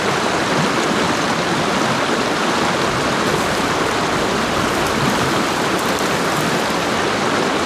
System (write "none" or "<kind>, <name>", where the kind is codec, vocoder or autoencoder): vocoder, BigVGAN v2